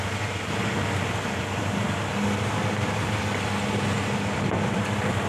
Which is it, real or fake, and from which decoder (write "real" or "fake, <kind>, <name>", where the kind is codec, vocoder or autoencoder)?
real